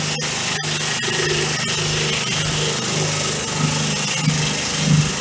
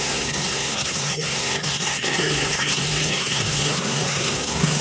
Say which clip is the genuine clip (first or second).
first